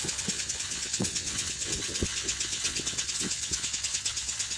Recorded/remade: remade